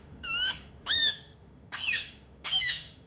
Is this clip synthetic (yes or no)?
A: yes